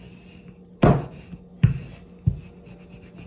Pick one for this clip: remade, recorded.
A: recorded